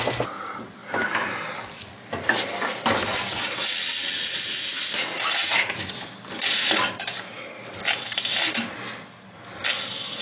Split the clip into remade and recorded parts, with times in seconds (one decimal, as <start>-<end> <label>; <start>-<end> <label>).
0.0-3.1 recorded; 3.1-5.2 remade; 5.2-10.2 recorded